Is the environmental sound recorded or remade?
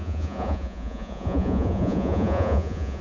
remade